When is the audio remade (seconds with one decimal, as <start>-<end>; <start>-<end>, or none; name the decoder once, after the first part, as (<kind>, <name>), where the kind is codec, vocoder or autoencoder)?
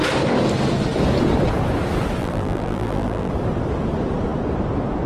2.2-3.3 (vocoder, BigVGAN v2)